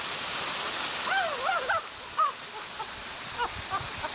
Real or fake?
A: real